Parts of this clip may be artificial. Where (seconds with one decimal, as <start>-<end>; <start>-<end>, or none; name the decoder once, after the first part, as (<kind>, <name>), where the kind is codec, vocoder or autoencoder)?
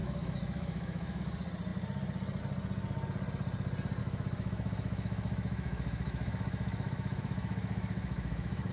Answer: 0.0-1.2 (autoencoder, DAC-VAE); 4.0-8.7